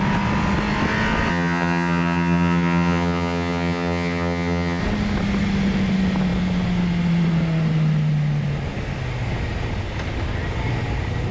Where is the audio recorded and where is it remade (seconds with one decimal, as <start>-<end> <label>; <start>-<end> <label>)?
0.0-1.3 recorded; 1.3-4.8 remade; 4.8-11.3 recorded